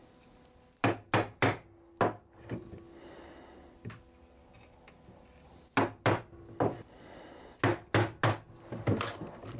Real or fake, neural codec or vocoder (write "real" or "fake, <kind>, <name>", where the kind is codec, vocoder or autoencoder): real